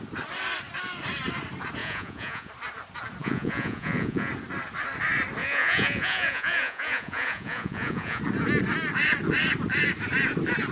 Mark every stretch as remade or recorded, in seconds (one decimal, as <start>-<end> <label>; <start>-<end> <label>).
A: 0.0-1.8 recorded; 1.8-2.5 remade; 2.5-3.2 recorded; 3.2-4.3 remade; 4.3-5.4 recorded; 5.4-8.2 remade; 8.2-10.7 recorded